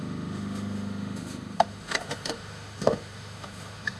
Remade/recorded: remade